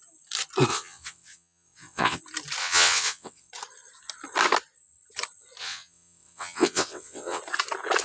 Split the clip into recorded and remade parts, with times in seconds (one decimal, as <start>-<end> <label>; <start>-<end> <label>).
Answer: 0.0-0.7 recorded; 0.7-2.2 remade; 2.2-2.6 recorded; 2.6-3.5 remade; 3.5-5.6 recorded; 5.6-7.4 remade; 7.4-8.0 recorded